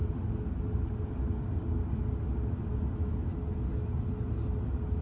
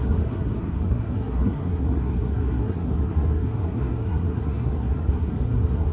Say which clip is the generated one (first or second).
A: second